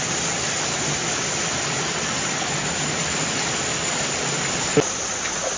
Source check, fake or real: real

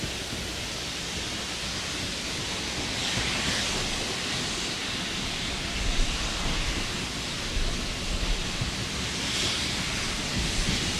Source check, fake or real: real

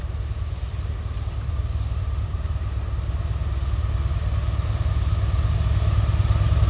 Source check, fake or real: real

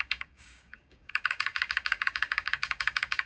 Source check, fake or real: fake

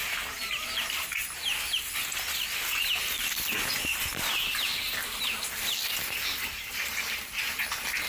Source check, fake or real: real